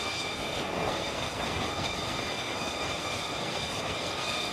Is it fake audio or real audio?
fake